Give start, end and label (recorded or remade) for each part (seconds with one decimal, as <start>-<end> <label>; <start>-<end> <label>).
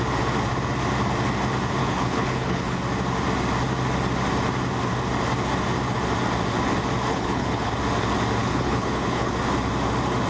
0.0-1.8 recorded; 1.8-2.8 remade; 2.8-7.1 recorded; 7.1-7.7 remade; 7.7-8.4 recorded; 8.4-9.3 remade; 9.3-10.3 recorded